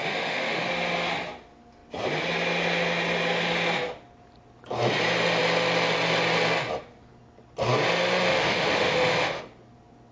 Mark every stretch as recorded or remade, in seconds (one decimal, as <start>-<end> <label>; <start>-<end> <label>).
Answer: 0.0-0.7 remade; 0.7-8.3 recorded; 8.3-9.4 remade; 9.4-10.1 recorded